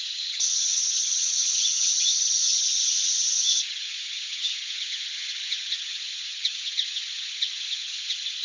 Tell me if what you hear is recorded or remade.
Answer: remade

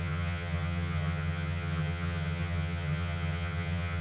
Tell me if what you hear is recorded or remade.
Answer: remade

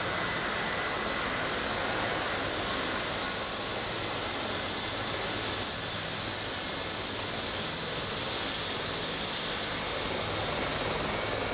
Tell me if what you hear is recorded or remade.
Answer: recorded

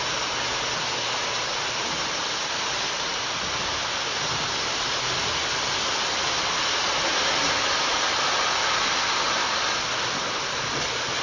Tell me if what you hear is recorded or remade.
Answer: recorded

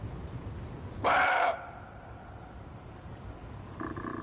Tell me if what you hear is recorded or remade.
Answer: recorded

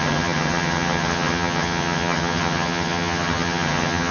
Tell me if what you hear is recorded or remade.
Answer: remade